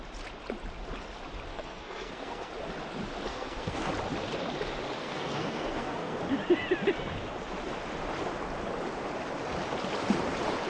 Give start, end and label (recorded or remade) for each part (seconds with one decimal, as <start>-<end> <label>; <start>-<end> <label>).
0.0-1.5 recorded; 1.5-2.5 remade; 2.5-3.3 recorded; 3.3-3.9 remade; 3.9-5.0 recorded; 5.0-6.2 remade; 6.2-10.7 recorded